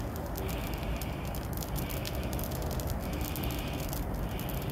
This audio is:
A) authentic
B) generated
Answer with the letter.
A